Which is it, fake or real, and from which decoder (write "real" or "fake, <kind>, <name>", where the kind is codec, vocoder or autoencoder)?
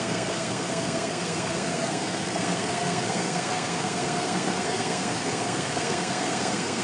fake, codec, SNAC